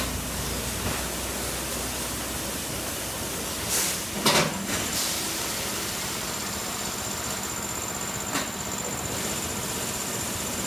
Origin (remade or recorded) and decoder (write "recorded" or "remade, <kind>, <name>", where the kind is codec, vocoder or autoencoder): recorded